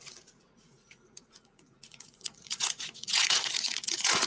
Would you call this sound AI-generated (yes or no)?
yes